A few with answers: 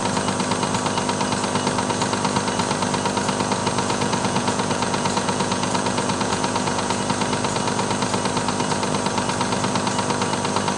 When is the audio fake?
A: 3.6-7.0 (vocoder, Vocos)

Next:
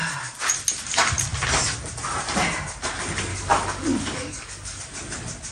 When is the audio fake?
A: 3.3-4.8 (codec, DAC)